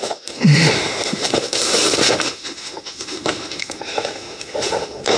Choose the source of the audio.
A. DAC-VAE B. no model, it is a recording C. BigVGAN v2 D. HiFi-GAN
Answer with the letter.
A